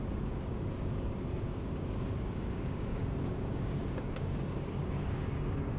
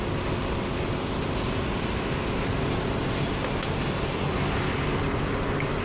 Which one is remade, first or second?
first